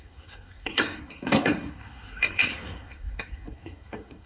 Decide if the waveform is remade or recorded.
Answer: remade